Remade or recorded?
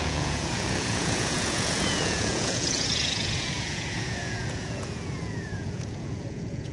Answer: remade